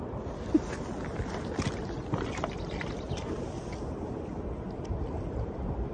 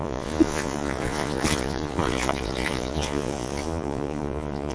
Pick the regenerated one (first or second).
second